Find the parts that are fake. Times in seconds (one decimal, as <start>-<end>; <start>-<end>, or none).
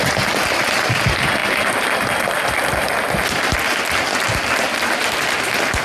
none